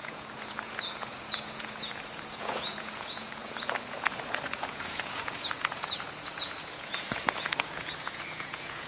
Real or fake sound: fake